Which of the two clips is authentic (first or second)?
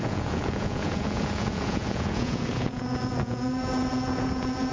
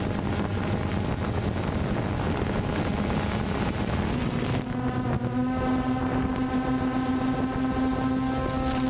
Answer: second